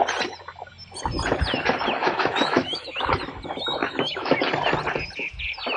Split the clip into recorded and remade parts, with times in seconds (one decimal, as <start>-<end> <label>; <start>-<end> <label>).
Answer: 0.0-2.0 recorded; 2.0-3.1 remade; 3.1-3.8 recorded; 3.8-4.4 remade; 4.4-5.8 recorded